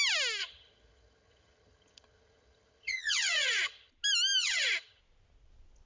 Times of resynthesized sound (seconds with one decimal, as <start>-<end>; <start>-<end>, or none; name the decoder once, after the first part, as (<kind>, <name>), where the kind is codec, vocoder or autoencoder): 0.4-3.9 (vocoder, HiFi-GAN); 4.4-5.0